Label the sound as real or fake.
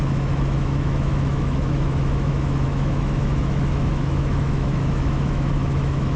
fake